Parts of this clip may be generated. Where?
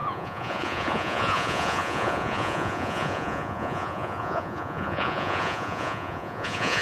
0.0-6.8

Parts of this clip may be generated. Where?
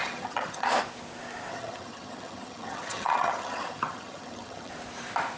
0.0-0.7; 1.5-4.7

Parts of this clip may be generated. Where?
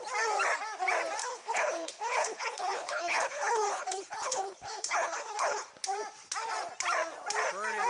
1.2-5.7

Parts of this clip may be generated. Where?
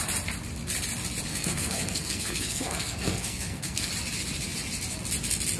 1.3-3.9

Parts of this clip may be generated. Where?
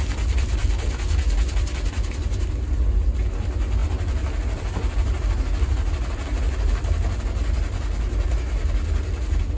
none